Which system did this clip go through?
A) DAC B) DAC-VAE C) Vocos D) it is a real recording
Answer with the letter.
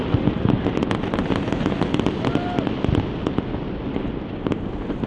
D